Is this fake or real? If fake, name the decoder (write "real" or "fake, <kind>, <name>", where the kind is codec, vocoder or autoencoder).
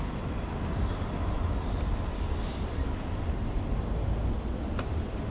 real